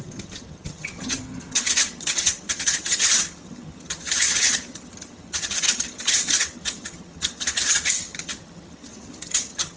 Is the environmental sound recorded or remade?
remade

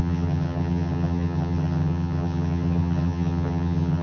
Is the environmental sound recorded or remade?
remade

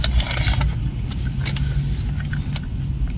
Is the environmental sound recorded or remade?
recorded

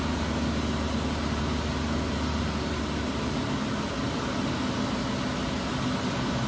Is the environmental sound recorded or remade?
recorded